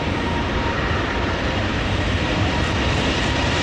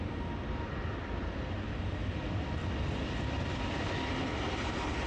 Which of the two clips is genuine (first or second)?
second